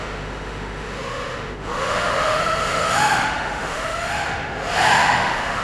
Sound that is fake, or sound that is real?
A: fake